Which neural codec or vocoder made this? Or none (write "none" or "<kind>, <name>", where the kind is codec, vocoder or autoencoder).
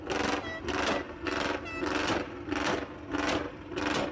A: none